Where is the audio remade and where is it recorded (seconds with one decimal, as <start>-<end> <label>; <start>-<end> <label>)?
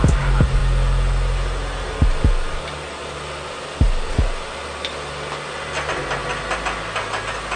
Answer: 0.0-7.6 recorded